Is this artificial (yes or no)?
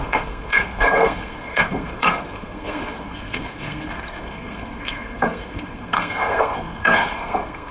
yes